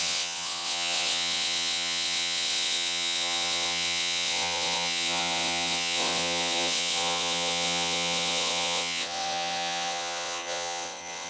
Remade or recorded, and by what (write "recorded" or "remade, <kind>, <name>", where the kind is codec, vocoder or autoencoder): remade, vocoder, WaveNeXt